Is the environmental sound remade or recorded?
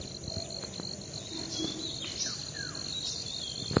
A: recorded